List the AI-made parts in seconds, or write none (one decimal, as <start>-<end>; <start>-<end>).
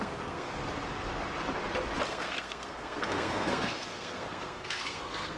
0.0-0.6; 2.1-5.4